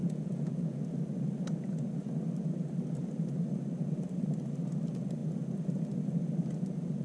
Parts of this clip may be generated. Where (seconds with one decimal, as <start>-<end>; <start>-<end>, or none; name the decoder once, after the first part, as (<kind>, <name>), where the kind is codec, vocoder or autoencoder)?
0.0-0.8 (vocoder, Vocos)